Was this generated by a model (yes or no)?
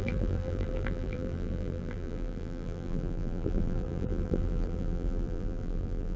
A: yes